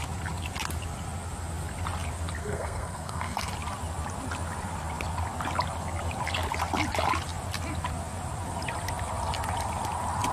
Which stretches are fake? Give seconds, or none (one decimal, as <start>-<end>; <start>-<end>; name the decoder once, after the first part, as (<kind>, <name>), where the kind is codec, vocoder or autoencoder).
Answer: 2.4-3.5 (codec, SNAC)